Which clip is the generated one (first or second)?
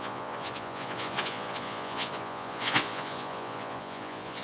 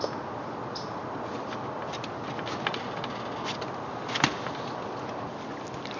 first